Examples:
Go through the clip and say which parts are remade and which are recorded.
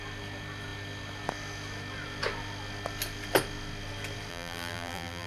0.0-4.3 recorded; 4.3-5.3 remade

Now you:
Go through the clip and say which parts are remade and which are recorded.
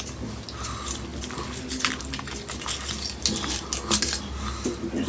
0.0-5.1 recorded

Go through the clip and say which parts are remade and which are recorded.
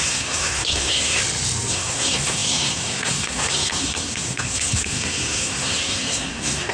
0.0-1.2 remade; 1.2-1.7 recorded; 1.7-6.7 remade